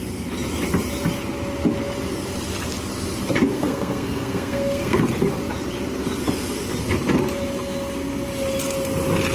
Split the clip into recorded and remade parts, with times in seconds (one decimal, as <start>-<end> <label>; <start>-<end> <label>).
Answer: 0.0-3.5 recorded; 3.5-5.0 remade; 5.0-9.3 recorded